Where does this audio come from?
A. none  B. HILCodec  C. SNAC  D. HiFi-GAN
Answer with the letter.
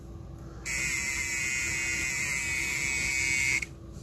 A